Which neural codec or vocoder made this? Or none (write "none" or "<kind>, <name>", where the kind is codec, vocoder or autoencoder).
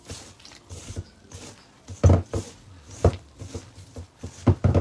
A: none